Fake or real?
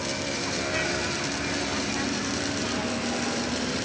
real